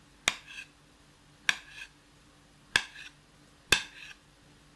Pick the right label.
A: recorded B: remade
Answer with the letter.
A